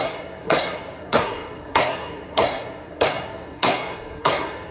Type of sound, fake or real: fake